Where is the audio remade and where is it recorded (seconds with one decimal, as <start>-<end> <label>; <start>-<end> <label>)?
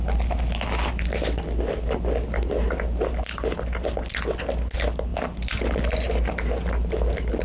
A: 0.0-7.4 recorded